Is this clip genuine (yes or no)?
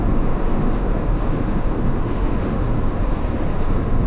no